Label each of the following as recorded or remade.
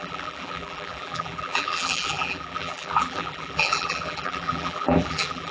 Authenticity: remade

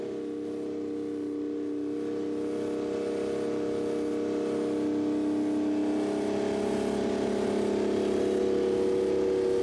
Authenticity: recorded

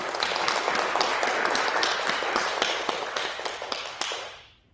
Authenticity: recorded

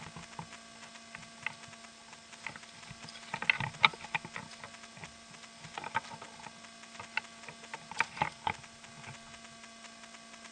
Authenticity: recorded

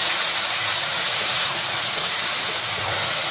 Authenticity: remade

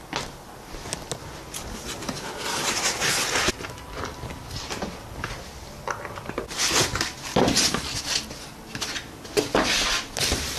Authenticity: recorded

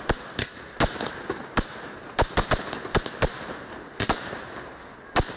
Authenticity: recorded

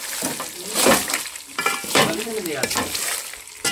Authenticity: recorded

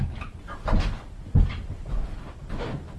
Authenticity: remade